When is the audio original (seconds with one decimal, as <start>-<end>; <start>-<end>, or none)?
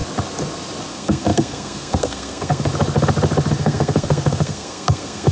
0.0-0.9; 2.7-3.5